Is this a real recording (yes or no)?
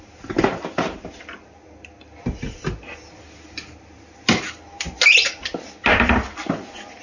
yes